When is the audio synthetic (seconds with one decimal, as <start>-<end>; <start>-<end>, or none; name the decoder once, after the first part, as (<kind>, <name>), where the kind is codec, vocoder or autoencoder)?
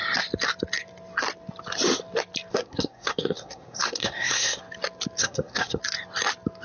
2.5-4.6 (codec, SNAC); 5.2-5.8